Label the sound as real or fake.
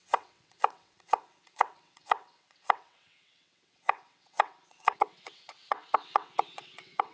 fake